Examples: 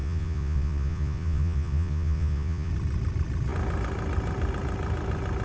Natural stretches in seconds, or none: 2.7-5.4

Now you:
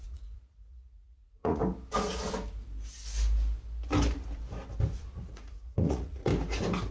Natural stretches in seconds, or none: 1.6-5.3; 6.3-6.9

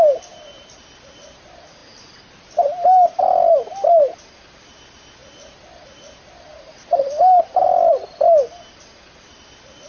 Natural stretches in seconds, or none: 0.0-9.9